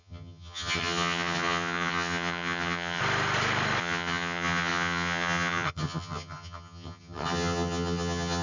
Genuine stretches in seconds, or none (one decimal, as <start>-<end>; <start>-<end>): 3.0-3.8